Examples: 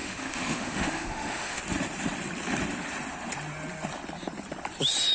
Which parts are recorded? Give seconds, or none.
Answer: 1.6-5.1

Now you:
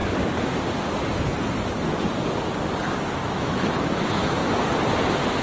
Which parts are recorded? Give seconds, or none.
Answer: 0.0-3.2; 4.4-5.4

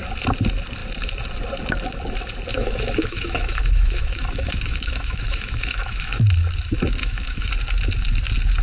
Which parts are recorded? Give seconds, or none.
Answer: 0.0-2.5; 6.2-7.0; 7.5-8.6